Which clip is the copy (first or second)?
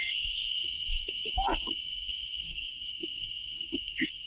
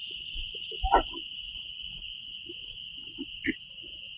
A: first